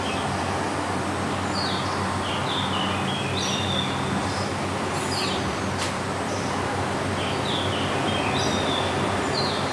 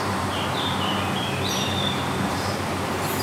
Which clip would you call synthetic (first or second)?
second